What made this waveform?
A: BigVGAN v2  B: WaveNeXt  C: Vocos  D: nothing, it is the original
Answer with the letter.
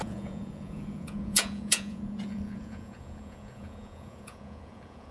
C